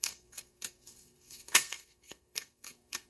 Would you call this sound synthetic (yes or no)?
yes